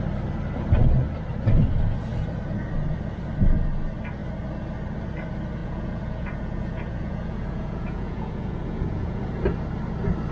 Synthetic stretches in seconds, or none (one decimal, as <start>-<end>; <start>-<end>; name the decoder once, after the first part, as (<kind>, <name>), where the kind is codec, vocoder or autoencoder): 5.6-9.2 (vocoder, Vocos)

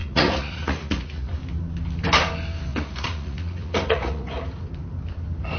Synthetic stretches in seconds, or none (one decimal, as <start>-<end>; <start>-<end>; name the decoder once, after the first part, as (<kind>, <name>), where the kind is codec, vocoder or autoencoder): 0.0-1.3 (vocoder, Vocos); 2.7-4.4

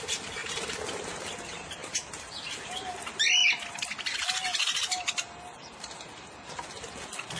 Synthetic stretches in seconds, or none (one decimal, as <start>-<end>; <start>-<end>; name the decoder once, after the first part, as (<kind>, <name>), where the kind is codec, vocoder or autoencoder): none

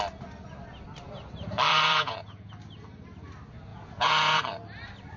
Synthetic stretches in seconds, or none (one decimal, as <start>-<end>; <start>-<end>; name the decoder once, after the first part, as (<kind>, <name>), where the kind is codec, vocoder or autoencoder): 1.7-2.5 (vocoder, Vocos); 3.7-4.4

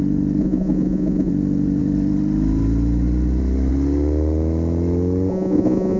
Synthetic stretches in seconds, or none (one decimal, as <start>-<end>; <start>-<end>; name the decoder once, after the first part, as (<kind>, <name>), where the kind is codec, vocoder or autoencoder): 0.4-1.3 (vocoder, Vocos); 5.3-6.0

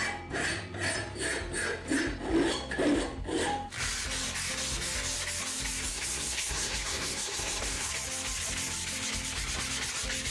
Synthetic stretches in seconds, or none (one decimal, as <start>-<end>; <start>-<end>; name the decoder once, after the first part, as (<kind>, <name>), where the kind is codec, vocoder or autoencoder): 5.9-7.9 (codec, SNAC)